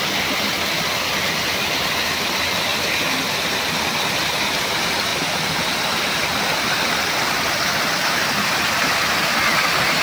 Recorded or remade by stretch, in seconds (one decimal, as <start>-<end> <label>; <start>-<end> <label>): 0.0-10.0 recorded